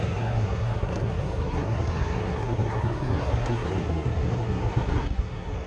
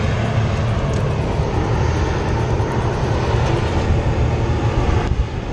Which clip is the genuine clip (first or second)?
second